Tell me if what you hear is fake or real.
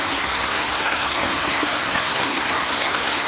fake